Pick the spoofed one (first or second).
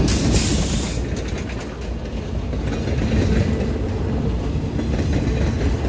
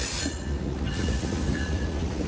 second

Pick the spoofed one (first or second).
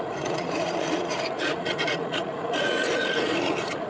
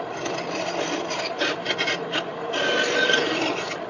first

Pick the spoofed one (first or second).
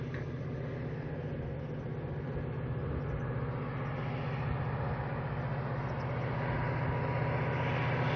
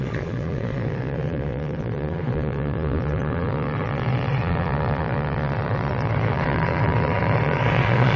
second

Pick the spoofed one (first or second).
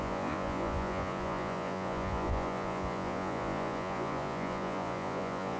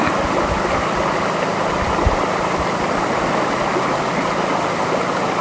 first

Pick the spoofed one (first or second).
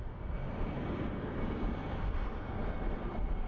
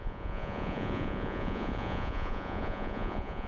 second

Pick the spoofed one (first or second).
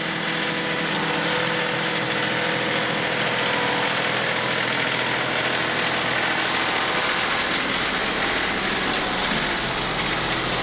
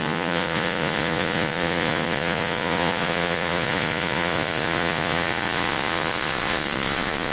second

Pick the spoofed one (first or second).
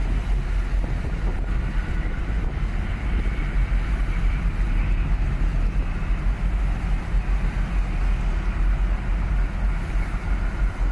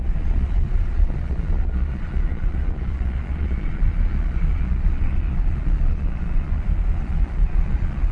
second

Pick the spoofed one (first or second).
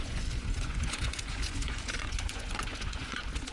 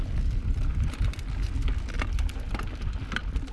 first